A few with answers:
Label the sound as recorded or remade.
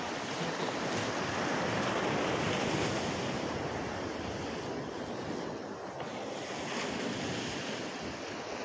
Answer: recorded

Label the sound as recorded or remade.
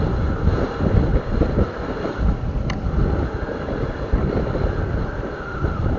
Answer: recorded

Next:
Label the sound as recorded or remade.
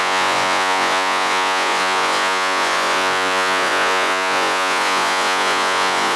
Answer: remade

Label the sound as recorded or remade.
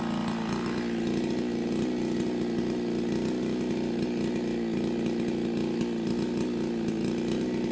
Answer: recorded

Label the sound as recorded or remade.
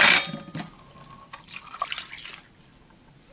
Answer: remade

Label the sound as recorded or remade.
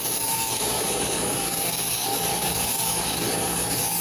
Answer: remade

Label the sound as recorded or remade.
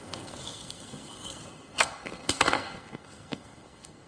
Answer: remade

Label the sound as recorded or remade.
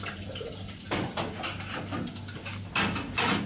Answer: recorded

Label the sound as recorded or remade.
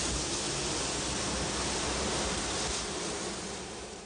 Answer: recorded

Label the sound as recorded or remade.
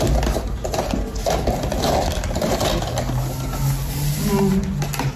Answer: recorded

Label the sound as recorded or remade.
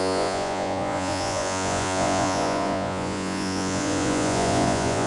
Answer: remade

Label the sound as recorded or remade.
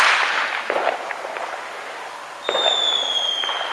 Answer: recorded